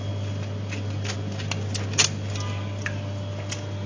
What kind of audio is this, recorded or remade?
recorded